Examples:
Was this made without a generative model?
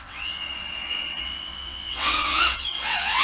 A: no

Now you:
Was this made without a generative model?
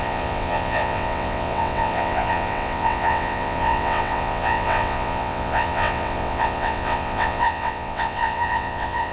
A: no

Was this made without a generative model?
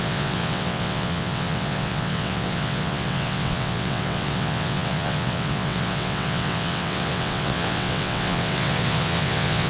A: no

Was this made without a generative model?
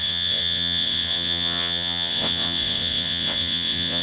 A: no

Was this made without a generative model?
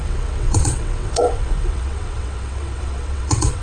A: no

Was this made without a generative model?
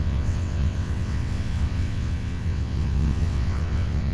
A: no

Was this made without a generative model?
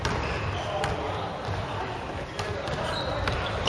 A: yes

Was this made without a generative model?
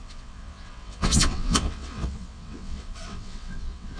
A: no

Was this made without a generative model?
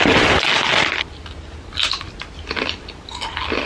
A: yes